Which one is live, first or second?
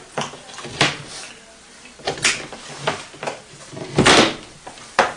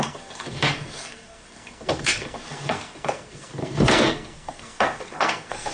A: first